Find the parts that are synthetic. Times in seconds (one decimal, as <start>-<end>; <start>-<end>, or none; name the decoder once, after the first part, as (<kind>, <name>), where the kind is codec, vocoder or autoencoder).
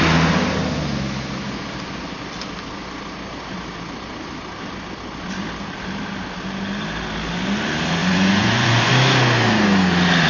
8.0-8.9 (vocoder, Vocos)